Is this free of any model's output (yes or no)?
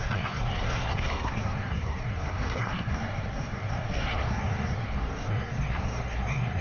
no